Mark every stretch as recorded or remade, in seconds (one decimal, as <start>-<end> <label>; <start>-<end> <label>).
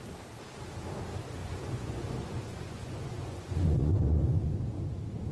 0.0-1.4 recorded; 1.4-4.5 remade; 4.5-5.3 recorded